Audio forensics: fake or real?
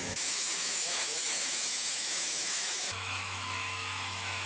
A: fake